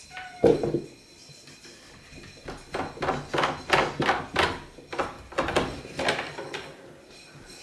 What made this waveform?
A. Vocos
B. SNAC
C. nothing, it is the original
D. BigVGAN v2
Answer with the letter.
C